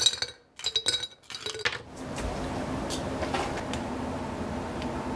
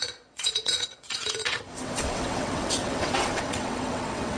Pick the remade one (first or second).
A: second